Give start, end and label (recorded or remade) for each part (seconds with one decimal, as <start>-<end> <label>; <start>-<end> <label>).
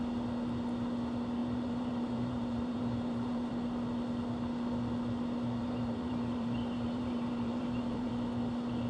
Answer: 0.0-1.4 recorded; 1.4-3.5 remade; 3.5-5.6 recorded; 5.6-8.1 remade; 8.1-8.9 recorded